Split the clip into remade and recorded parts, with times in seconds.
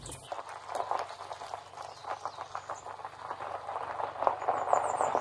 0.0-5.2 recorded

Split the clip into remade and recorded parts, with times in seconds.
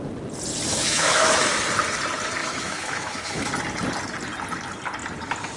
0.0-0.7 recorded; 0.7-1.6 remade; 1.6-2.4 recorded; 2.4-3.5 remade; 3.5-5.6 recorded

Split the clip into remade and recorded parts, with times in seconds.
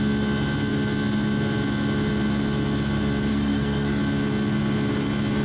0.0-3.3 recorded; 3.3-4.0 remade; 4.0-5.4 recorded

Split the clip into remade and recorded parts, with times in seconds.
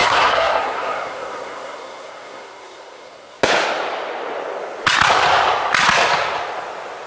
0.0-3.4 remade; 3.4-7.1 recorded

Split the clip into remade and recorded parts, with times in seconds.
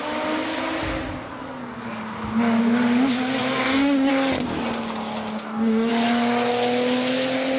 0.0-3.6 recorded; 3.6-4.1 remade; 4.1-5.3 recorded; 5.3-5.9 remade; 5.9-7.6 recorded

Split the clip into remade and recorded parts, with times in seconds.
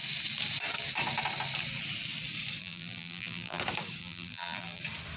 0.0-2.6 recorded; 2.6-3.6 remade; 3.6-4.0 recorded; 4.0-4.8 remade; 4.8-5.2 recorded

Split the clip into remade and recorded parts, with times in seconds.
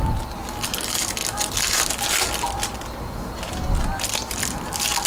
0.0-5.1 recorded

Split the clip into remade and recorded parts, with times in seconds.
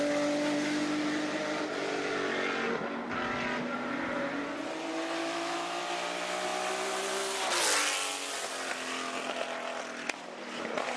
0.0-5.2 recorded; 5.2-5.8 remade; 5.8-11.0 recorded